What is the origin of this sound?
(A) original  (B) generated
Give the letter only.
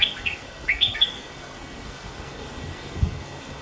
B